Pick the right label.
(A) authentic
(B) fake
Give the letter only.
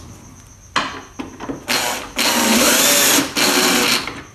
A